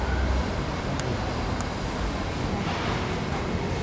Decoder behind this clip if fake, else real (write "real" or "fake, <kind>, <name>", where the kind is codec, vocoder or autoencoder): real